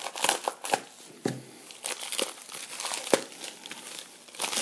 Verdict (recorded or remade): recorded